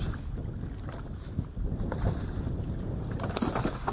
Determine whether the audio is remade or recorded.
recorded